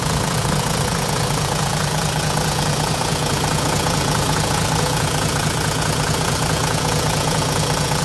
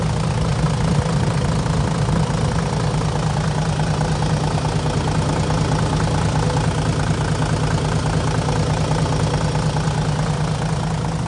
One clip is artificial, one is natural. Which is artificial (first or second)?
first